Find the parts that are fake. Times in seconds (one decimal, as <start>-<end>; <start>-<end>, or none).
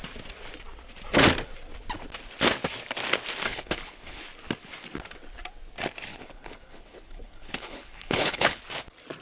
3.5-4.2; 6.1-8.6